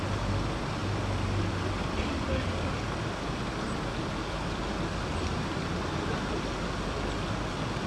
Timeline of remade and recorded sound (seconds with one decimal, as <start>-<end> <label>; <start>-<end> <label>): 0.0-7.9 recorded